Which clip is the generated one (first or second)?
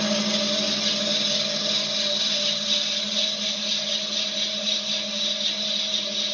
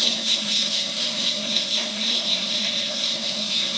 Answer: second